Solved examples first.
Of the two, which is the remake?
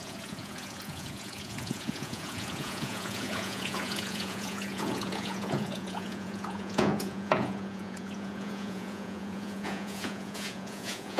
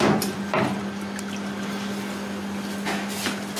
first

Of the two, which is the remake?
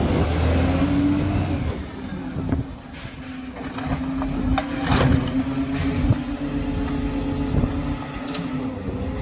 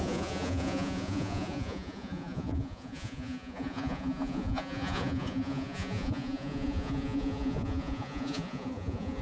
second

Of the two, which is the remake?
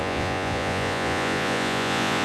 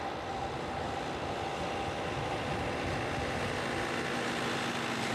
first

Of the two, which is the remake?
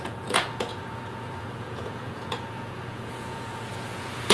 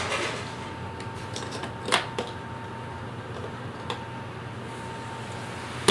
first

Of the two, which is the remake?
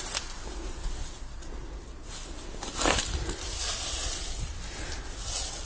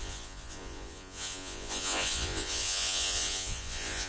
second